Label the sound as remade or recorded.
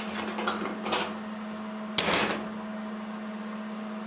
recorded